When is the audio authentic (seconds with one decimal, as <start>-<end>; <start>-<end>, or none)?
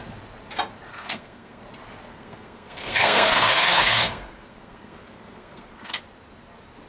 0.0-0.9; 1.6-2.1; 6.0-6.9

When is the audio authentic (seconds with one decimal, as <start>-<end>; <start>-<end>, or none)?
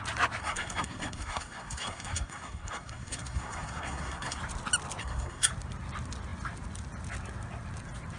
0.0-0.4; 4.4-5.0; 5.5-8.2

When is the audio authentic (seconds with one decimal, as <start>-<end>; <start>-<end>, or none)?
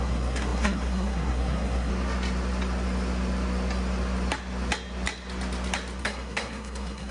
1.9-6.0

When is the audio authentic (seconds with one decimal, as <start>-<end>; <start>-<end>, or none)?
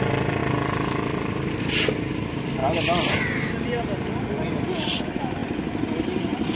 0.0-6.6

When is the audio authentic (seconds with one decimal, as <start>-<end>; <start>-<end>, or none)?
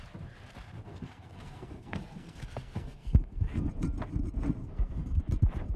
0.0-0.9; 3.7-4.6; 5.2-5.8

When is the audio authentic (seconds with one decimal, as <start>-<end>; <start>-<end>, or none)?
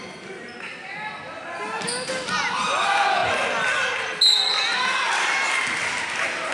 0.0-6.5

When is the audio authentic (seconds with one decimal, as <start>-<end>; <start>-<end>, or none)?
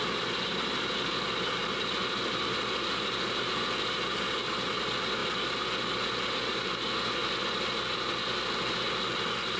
0.0-9.6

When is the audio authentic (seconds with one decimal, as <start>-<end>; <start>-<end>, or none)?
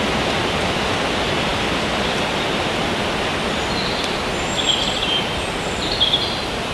0.0-6.7